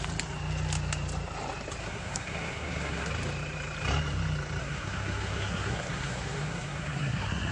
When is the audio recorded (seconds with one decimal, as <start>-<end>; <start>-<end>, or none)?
0.0-1.8; 3.1-4.6